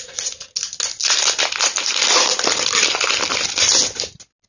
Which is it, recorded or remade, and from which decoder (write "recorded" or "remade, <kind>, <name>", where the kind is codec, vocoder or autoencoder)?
recorded